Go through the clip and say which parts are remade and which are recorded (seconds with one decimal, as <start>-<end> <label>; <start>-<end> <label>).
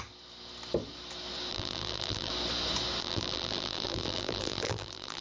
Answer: 0.0-1.5 recorded; 1.5-2.3 remade; 2.3-3.0 recorded; 3.0-5.2 remade